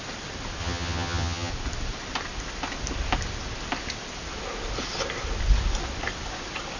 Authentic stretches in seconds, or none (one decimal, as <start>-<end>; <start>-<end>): 0.0-0.6; 1.5-6.8